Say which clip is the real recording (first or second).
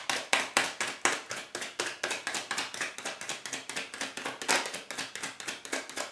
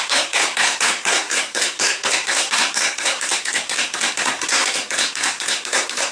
first